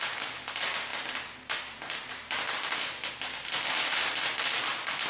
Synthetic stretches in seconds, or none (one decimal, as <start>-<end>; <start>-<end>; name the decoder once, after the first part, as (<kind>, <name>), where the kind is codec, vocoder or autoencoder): none